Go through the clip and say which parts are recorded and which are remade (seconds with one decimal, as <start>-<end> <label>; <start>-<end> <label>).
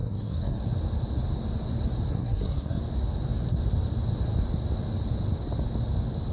0.0-0.6 remade; 0.6-2.1 recorded; 2.1-2.8 remade; 2.8-6.3 recorded